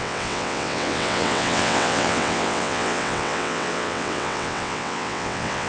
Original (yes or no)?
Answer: no